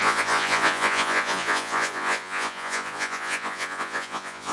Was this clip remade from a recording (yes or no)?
yes